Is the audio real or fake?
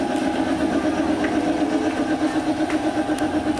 real